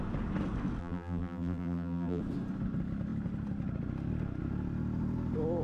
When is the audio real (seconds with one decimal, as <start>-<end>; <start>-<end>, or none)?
0.0-0.8; 2.2-5.6

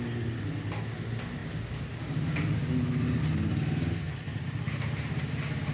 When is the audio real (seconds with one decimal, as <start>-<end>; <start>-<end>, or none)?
0.0-4.3; 5.3-5.7

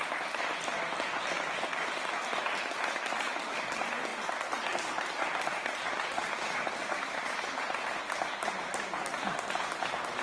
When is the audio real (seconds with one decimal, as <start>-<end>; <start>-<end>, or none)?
0.0-10.2

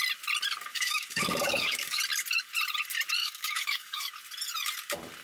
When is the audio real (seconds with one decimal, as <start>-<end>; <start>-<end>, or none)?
0.0-0.7; 2.0-3.2; 4.1-5.2